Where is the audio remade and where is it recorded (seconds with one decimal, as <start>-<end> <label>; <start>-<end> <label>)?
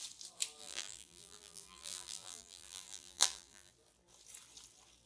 0.0-0.6 recorded; 0.6-3.7 remade; 3.7-5.1 recorded